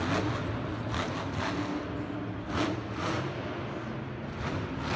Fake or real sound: real